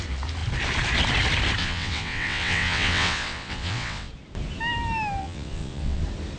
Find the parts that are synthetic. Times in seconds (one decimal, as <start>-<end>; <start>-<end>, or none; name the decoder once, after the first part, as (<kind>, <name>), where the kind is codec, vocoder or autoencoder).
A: 1.6-4.1 (vocoder, WaveNeXt); 5.2-6.0